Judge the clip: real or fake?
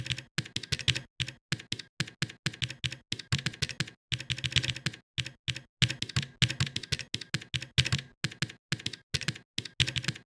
real